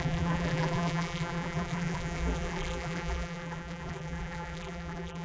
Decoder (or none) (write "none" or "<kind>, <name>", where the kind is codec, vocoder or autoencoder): vocoder, BigVGAN v2